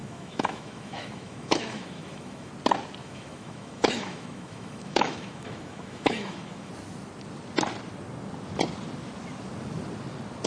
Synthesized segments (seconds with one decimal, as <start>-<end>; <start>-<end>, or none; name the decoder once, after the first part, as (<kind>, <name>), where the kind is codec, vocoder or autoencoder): 0.0-2.5 (autoencoder, DAC-VAE); 3.0-6.7